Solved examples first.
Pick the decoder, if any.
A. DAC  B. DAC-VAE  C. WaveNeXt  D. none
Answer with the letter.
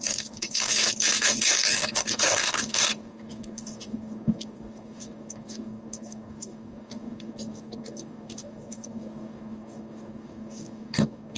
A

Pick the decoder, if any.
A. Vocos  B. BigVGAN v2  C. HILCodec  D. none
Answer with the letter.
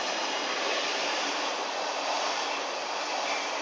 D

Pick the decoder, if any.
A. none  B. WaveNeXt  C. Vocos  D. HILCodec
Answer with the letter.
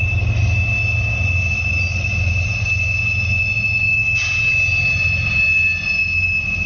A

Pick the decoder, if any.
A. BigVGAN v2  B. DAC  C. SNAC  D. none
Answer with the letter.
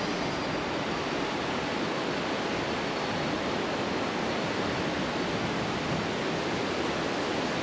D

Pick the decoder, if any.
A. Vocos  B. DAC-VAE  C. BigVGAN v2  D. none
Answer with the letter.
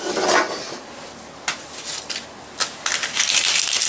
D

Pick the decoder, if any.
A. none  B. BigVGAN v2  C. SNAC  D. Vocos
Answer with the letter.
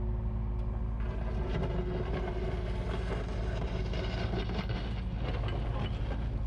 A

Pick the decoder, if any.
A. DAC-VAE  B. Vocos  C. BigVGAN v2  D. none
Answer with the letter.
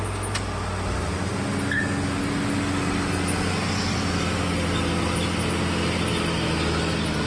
D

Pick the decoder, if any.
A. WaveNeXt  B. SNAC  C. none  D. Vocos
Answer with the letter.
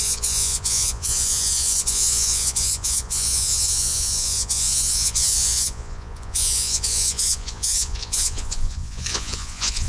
D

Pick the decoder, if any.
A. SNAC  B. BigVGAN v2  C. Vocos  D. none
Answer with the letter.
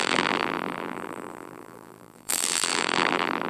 B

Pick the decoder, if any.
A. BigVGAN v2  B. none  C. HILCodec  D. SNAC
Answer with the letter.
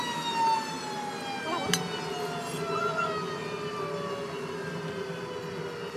B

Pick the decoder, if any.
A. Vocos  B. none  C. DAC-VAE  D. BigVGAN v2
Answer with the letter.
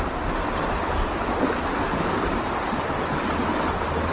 B